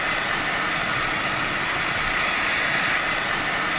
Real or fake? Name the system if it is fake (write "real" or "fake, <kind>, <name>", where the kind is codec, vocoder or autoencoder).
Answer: real